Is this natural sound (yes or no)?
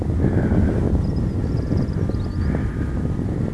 yes